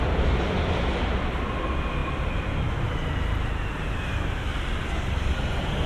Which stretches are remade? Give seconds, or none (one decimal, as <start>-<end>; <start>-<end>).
none